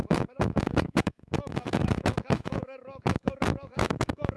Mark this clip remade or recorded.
remade